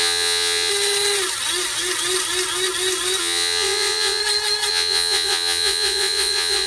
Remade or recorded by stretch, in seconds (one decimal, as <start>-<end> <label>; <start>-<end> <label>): 0.0-0.7 remade; 0.7-3.2 recorded; 3.2-4.2 remade; 4.2-4.7 recorded; 4.7-6.7 remade